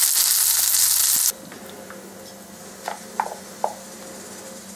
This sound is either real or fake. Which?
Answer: real